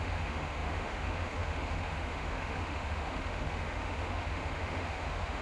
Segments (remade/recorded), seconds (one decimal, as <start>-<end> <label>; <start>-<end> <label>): 0.0-5.4 remade